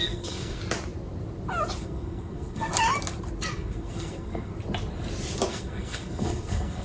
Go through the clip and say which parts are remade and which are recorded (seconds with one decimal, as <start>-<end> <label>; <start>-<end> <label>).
0.0-0.6 remade; 0.6-1.8 recorded; 1.8-2.7 remade; 2.7-3.5 recorded; 3.5-4.5 remade; 4.5-5.5 recorded; 5.5-6.8 remade